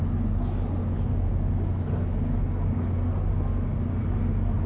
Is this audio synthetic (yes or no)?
no